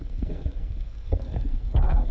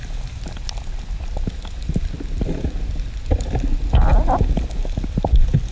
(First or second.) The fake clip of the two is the first